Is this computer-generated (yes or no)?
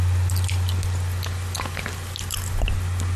no